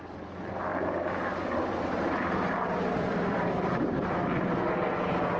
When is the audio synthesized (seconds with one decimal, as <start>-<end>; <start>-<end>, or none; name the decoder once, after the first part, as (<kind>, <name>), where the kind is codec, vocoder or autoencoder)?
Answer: 0.7-3.9 (vocoder, BigVGAN v2)